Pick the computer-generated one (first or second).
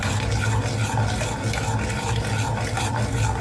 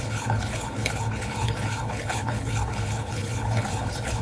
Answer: second